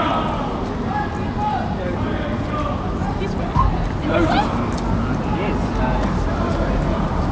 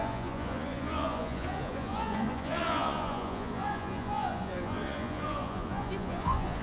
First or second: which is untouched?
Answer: first